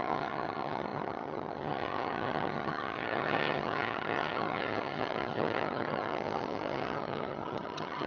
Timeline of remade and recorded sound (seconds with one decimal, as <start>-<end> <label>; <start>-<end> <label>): 0.0-8.1 remade